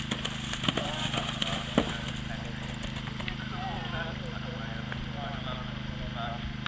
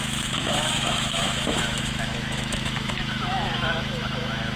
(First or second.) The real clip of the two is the first